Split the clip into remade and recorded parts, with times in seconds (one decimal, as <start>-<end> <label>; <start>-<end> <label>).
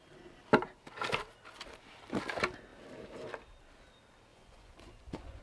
0.0-4.3 recorded; 4.3-5.4 remade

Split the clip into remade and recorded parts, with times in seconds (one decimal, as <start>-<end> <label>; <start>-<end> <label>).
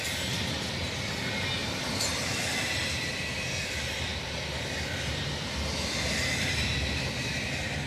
0.0-1.6 recorded; 1.6-2.6 remade; 2.6-7.9 recorded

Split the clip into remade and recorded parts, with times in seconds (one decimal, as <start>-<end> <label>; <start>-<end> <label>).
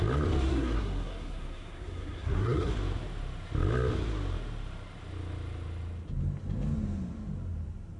0.0-0.5 recorded; 0.5-2.7 remade; 2.7-8.0 recorded